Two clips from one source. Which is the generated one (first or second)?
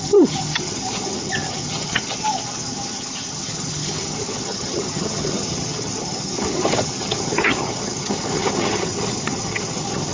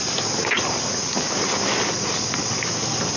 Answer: first